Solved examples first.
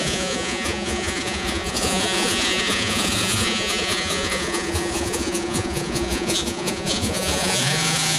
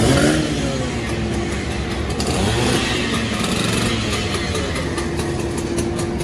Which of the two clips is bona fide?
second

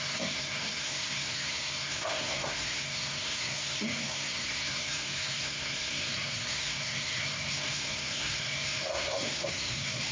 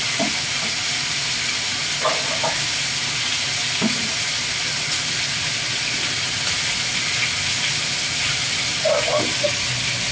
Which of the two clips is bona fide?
second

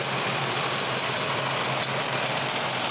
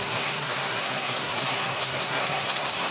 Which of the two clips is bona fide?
first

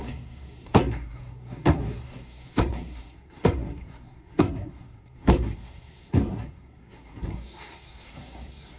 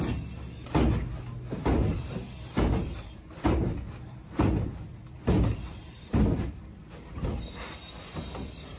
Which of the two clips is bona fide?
second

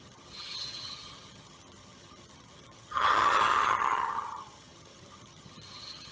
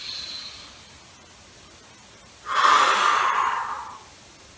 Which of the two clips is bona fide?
second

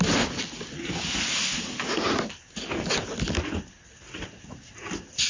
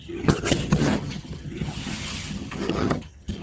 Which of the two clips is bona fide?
first